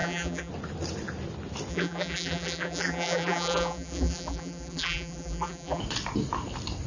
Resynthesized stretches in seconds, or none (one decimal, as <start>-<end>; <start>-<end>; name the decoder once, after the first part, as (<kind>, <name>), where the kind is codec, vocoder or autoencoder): 0.0-0.5 (vocoder, BigVGAN v2); 1.7-5.8